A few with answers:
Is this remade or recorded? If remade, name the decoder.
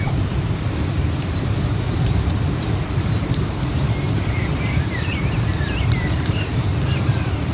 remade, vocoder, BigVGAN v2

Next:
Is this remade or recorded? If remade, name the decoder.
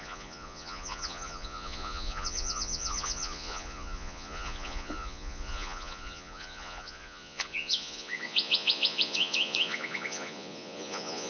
remade, vocoder, Vocos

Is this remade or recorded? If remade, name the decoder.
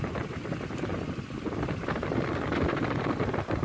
recorded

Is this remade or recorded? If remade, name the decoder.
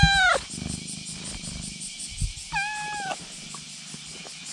recorded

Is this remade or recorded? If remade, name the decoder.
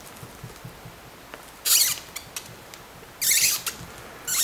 recorded